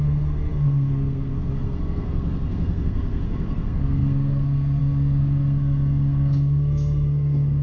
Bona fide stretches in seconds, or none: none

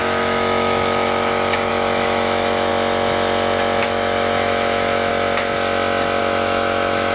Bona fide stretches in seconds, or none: 2.7-3.8; 5.1-6.2

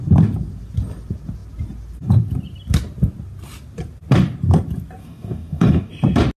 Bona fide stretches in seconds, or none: 0.0-5.0; 5.9-6.4

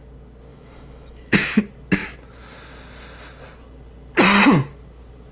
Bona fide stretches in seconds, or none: 0.0-0.5; 1.6-5.3

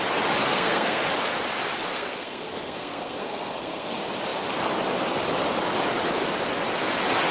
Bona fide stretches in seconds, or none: 0.0-0.4; 1.0-1.9; 3.9-7.3

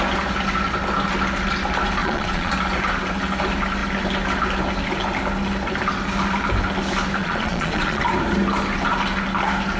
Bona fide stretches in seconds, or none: 0.0-2.0; 2.5-7.2; 8.0-9.8

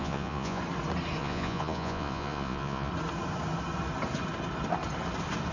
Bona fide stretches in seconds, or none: 0.6-1.2; 2.9-5.5